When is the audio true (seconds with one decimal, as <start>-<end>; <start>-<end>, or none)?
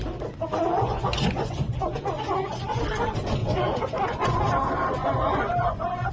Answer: 0.0-0.7; 2.8-3.4; 4.4-5.0